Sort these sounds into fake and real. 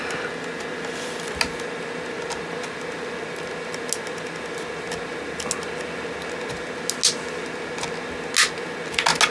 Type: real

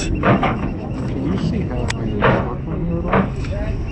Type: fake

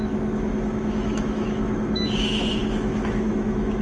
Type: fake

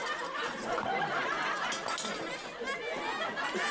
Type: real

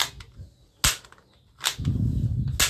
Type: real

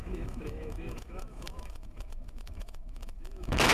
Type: fake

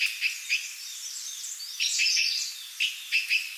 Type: real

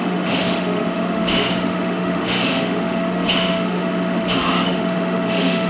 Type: fake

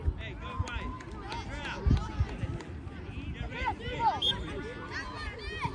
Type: real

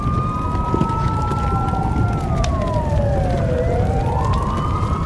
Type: real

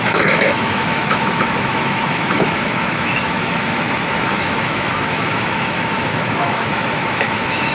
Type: fake